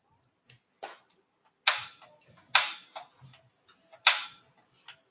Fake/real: real